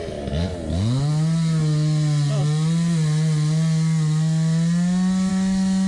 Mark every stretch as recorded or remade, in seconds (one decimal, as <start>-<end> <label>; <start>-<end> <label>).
0.0-5.9 recorded